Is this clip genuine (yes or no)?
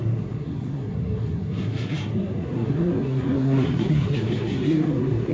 no